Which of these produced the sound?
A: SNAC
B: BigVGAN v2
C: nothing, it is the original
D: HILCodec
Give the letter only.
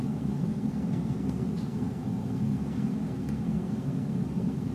A